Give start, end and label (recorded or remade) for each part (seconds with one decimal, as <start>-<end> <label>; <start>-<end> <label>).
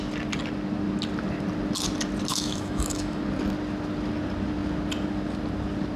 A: 0.0-2.3 recorded; 2.3-3.2 remade; 3.2-6.0 recorded